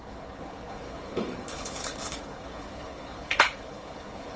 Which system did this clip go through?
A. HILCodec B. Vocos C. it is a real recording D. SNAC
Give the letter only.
A